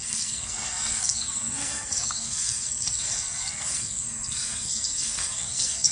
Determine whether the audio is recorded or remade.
remade